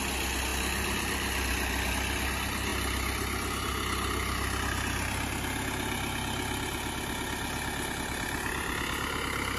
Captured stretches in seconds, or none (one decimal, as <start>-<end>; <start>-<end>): 0.0-9.6